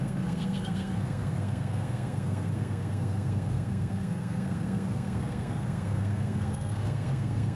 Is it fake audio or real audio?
fake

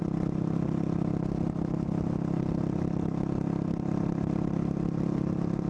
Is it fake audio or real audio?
real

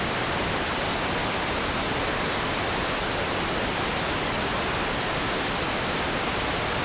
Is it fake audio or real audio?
real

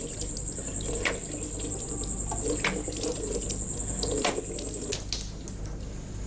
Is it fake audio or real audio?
real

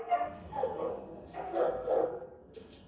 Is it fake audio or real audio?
fake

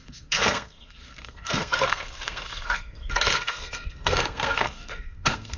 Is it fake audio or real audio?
fake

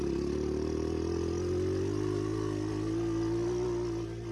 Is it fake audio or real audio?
real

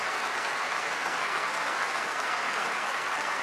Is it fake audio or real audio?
fake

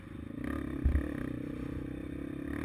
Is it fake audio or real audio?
real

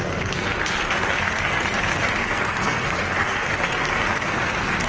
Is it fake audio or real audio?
fake